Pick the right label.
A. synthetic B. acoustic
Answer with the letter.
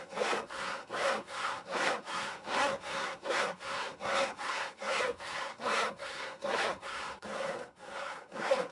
A